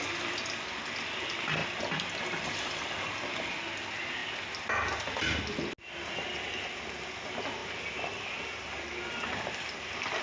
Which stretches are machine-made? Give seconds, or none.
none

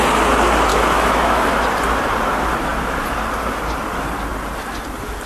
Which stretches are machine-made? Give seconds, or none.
0.7-1.5 (autoencoder, DAC-VAE)

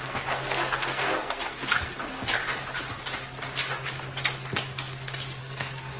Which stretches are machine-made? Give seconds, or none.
0.0-2.4 (codec, SNAC); 5.4-6.0

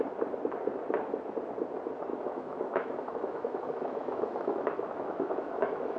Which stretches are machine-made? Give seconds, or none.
2.1-6.0 (autoencoder, DAC-VAE)